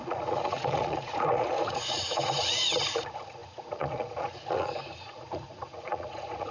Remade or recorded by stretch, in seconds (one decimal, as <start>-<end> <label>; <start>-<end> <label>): 0.0-6.5 remade